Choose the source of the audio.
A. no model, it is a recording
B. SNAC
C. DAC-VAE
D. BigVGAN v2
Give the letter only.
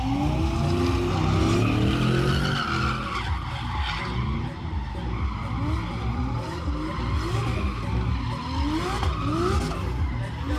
A